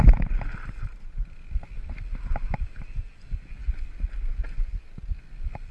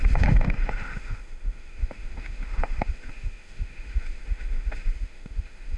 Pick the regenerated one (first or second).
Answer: second